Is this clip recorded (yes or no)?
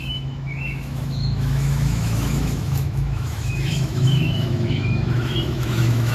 no